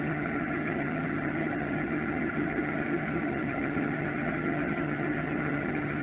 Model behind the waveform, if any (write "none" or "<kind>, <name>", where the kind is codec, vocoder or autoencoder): vocoder, HiFi-GAN